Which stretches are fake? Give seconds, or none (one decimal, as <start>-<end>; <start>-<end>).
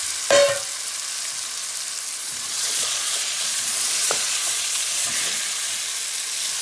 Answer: 2.2-5.8